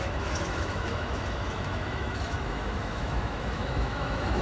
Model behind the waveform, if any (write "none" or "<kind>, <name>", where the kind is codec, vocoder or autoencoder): autoencoder, DAC-VAE